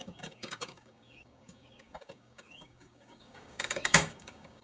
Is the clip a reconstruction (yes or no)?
yes